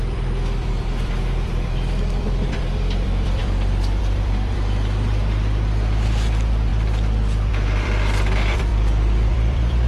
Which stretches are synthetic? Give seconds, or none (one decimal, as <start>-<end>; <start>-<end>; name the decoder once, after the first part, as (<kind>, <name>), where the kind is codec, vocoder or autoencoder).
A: 0.0-9.9 (vocoder, BigVGAN v2)